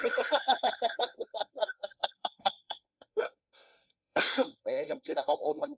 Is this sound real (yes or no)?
no